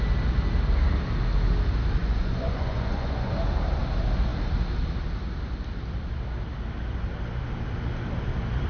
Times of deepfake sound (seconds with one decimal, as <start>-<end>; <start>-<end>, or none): 2.0-3.3